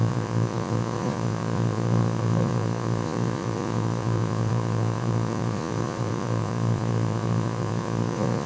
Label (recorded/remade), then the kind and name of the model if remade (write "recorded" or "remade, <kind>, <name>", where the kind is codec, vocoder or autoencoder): remade, vocoder, Vocos